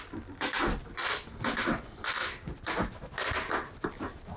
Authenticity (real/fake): real